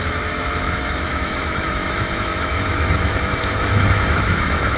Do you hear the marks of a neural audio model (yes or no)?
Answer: yes